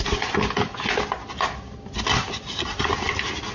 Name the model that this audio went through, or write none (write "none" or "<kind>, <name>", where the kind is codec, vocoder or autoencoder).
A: none